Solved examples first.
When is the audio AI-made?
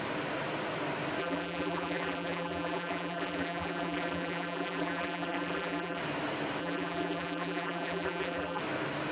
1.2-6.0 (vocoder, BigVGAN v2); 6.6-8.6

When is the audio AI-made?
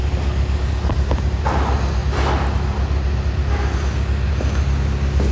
none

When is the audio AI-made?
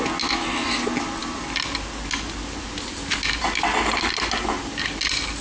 none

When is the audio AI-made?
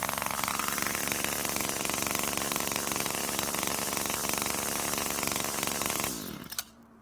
6.4-7.0 (vocoder, BigVGAN v2)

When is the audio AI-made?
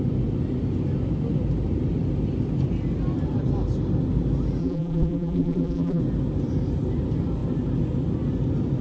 4.6-6.0 (vocoder, BigVGAN v2)